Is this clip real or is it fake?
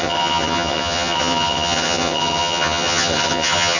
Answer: fake